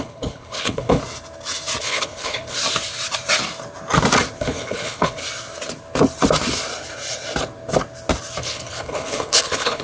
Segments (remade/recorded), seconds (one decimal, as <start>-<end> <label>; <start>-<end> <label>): 0.0-1.0 remade; 1.0-1.8 recorded; 1.8-2.6 remade; 2.6-4.4 recorded; 4.4-5.2 remade; 5.2-8.4 recorded; 8.4-9.8 remade